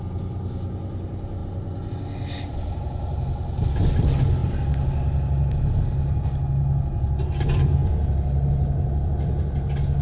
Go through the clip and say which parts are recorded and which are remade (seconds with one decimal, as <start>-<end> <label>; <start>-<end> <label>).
0.0-10.0 recorded